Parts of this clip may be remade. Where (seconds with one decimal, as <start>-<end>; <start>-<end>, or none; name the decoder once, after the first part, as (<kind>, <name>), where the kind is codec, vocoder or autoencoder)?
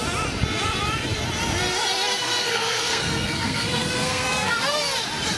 2.2-4.8 (codec, SNAC)